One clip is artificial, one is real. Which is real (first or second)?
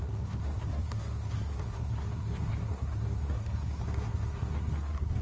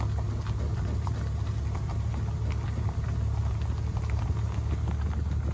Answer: second